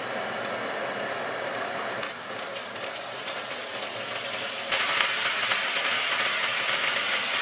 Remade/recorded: recorded